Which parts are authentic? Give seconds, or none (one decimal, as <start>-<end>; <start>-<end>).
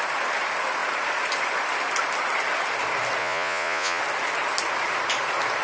0.0-3.2; 4.0-5.6